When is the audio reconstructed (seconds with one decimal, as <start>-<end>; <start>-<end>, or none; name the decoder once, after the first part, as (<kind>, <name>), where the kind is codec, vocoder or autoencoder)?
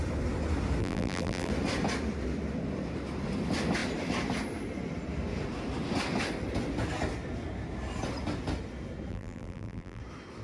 0.8-1.5 (vocoder, BigVGAN v2); 9.1-10.0